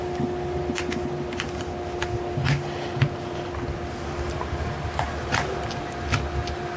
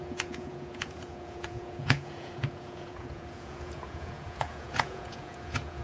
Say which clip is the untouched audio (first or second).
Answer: first